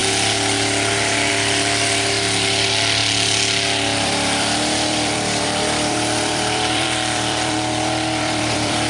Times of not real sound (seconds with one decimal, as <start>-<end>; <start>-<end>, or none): 1.3-8.9